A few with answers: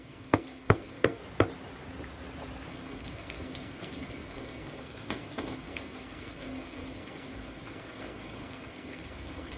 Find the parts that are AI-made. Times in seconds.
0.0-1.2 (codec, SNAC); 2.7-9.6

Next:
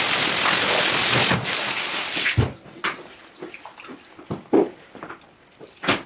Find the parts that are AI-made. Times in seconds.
none

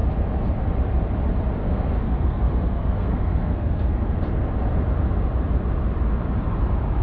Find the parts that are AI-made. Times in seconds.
1.6-4.1 (codec, SNAC)

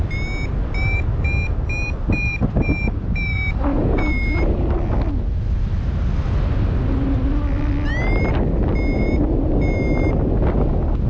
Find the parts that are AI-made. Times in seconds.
none

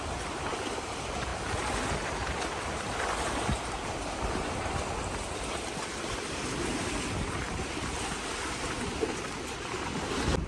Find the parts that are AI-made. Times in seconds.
none

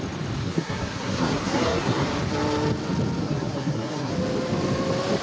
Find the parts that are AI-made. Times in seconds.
0.4-2.1 (codec, SNAC); 3.2-4.1

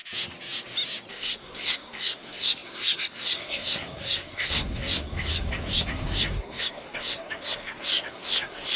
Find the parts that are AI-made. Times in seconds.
1.1-8.8 (codec, SNAC)

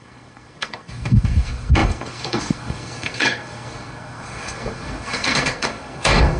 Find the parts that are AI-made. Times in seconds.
0.0-6.4 (codec, SNAC)